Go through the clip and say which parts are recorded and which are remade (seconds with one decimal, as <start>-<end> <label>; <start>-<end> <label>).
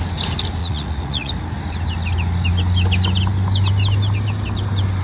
0.0-0.6 recorded; 0.6-1.3 remade; 1.3-5.0 recorded